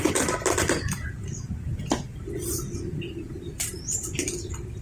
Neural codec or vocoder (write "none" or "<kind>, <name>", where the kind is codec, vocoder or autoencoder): none